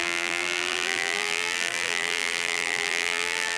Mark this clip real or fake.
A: fake